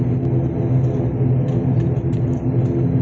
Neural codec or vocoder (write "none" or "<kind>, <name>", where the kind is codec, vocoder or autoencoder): none